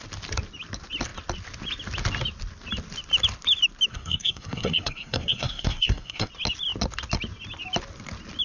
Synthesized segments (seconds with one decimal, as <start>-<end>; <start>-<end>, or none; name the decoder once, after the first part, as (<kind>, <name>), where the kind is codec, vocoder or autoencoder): 3.9-6.3 (codec, SNAC)